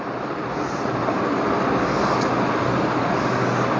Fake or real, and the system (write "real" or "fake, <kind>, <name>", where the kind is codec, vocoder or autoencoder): real